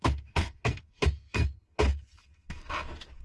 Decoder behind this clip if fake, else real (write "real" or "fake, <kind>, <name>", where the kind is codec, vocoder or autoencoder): fake, codec, SNAC